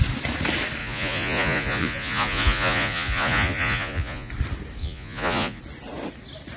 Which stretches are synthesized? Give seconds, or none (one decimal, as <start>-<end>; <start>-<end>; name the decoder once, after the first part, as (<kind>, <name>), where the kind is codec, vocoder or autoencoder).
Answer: 0.8-4.3 (vocoder, Vocos); 4.8-5.6